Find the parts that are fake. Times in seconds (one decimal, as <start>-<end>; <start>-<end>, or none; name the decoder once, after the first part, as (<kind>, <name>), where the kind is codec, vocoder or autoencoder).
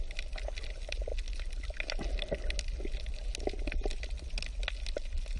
none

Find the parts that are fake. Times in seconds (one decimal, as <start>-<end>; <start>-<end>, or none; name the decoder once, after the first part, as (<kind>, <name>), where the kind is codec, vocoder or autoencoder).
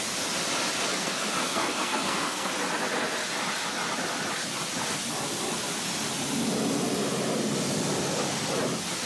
0.9-2.5 (codec, SNAC)